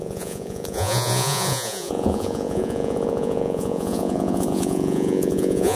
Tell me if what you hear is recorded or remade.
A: remade